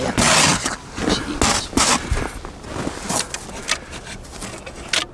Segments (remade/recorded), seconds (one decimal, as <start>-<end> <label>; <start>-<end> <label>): 0.0-5.1 recorded